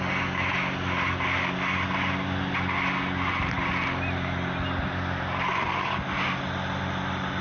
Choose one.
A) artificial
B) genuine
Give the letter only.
B